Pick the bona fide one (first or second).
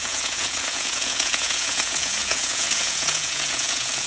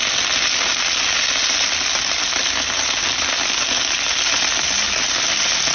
second